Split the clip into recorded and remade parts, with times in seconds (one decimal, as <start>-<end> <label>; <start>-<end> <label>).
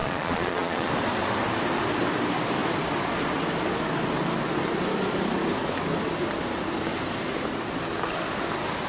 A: 0.0-0.9 remade; 0.9-8.9 recorded